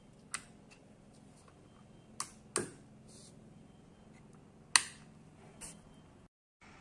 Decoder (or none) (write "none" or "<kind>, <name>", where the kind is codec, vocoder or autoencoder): none